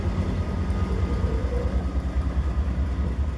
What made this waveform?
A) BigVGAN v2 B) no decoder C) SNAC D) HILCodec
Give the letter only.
B